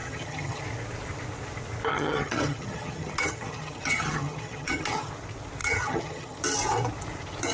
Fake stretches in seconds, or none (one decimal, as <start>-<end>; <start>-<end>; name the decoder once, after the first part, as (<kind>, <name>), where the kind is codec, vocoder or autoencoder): 0.0-0.6 (vocoder, HiFi-GAN); 1.9-5.1; 5.6-6.4